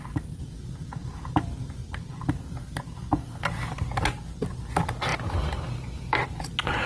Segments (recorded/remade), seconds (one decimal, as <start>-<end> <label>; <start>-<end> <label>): 0.0-1.0 recorded; 1.0-2.0 remade; 2.0-6.9 recorded